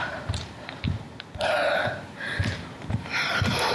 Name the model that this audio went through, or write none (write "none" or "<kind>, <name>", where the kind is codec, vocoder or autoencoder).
vocoder, BigVGAN v2